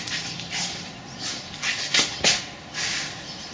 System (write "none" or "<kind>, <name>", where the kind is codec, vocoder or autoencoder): none